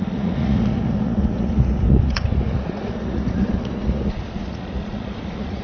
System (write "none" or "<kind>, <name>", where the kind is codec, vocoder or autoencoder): vocoder, Vocos